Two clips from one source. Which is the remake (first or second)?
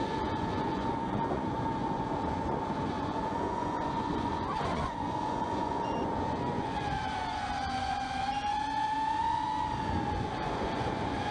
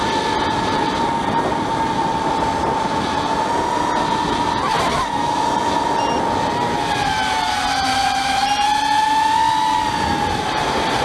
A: first